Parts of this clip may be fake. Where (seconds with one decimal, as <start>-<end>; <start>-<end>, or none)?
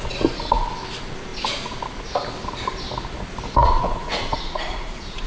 3.6-5.3